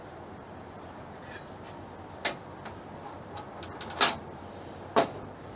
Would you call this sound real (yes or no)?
yes